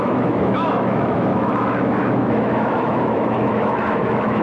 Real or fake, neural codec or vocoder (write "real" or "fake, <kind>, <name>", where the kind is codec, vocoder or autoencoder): fake, autoencoder, DAC-VAE